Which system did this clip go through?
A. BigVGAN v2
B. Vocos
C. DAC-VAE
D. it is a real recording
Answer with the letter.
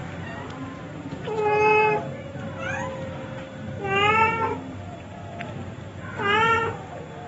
D